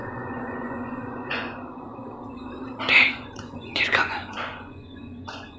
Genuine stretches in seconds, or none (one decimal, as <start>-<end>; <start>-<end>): 2.0-3.1